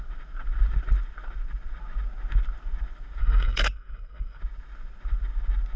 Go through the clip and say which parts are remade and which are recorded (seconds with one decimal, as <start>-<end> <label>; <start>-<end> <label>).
0.0-3.2 recorded; 3.2-4.4 remade; 4.4-5.8 recorded